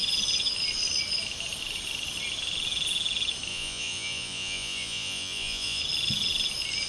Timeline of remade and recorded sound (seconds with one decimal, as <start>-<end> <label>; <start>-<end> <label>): 0.0-3.5 recorded; 3.5-5.8 remade; 5.8-6.9 recorded